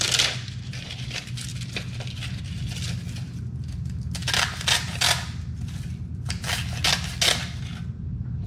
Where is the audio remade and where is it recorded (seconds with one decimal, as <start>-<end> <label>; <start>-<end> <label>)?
0.0-8.5 recorded